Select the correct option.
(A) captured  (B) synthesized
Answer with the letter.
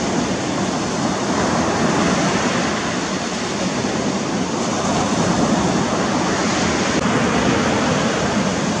A